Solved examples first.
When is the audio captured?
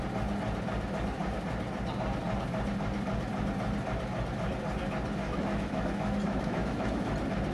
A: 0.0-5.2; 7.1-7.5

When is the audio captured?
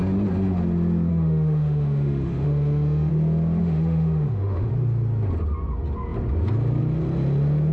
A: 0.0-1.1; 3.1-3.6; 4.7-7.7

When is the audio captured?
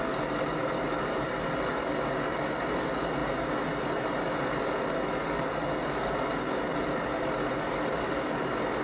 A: 0.0-8.8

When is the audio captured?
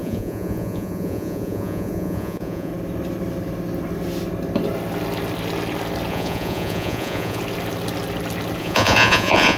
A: 2.7-6.1; 7.4-8.6